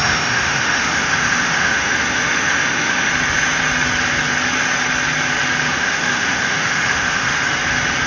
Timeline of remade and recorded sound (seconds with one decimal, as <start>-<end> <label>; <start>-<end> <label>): 0.0-3.1 remade; 3.1-5.7 recorded; 5.7-7.5 remade; 7.5-8.1 recorded